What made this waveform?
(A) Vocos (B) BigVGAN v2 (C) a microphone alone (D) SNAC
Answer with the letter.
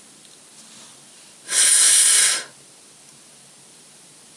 C